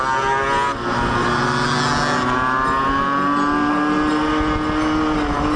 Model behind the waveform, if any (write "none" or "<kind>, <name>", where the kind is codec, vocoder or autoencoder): none